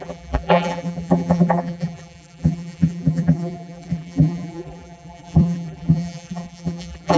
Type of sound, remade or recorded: remade